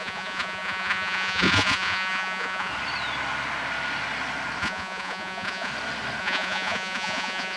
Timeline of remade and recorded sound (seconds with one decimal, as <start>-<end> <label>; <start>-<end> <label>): 0.0-2.7 remade; 2.7-4.6 recorded; 4.6-5.7 remade; 5.7-6.2 recorded; 6.2-7.6 remade